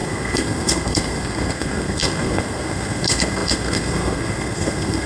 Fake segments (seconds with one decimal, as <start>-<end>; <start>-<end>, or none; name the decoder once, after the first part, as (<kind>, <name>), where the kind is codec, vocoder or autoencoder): 0.0-5.1 (codec, SNAC)